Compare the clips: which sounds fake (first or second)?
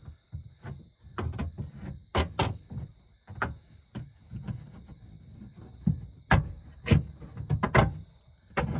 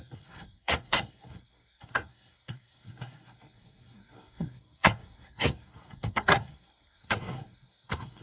second